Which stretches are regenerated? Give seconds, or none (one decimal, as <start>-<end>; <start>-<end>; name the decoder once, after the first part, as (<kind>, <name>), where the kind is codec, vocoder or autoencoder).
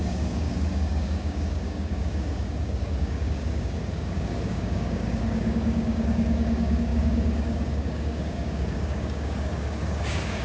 0.0-10.4 (codec, DAC)